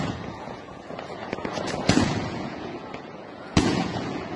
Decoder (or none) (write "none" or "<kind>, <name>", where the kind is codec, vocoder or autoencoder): vocoder, Vocos